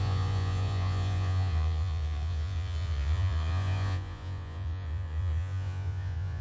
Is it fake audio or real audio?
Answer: fake